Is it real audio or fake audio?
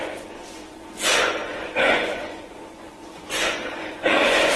fake